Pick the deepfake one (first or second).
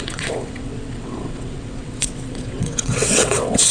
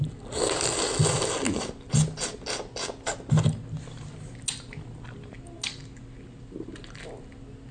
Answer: first